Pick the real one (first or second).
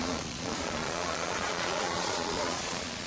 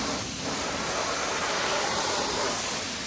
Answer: second